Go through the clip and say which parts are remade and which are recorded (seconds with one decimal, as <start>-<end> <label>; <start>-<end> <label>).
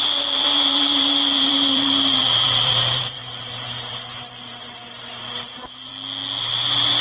0.0-5.9 remade; 5.9-6.4 recorded; 6.4-7.0 remade